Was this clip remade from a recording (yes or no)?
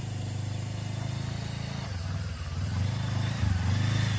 no